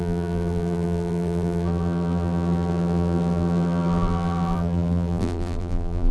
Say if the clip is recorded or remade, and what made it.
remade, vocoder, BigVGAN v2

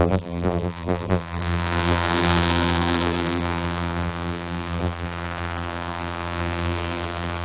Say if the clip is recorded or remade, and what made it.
remade, vocoder, BigVGAN v2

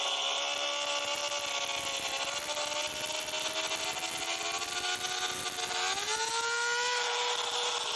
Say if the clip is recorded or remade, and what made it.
recorded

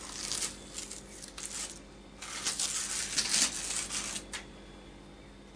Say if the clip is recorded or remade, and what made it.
recorded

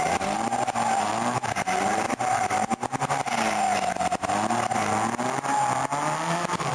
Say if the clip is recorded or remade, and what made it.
remade, vocoder, BigVGAN v2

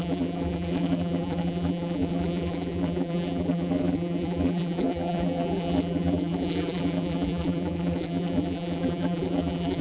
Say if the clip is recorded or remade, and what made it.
remade, vocoder, BigVGAN v2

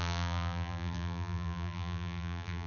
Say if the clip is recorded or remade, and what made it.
remade, vocoder, BigVGAN v2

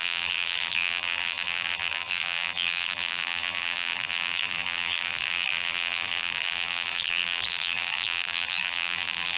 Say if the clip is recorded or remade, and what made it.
remade, vocoder, BigVGAN v2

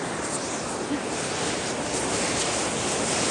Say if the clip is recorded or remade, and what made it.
recorded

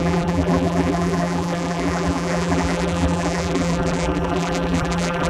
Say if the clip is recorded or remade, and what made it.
remade, vocoder, BigVGAN v2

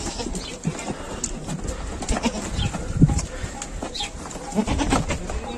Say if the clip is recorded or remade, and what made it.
recorded